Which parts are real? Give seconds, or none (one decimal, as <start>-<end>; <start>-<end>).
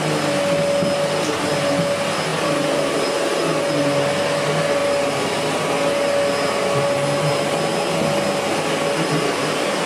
0.0-2.3; 3.4-9.9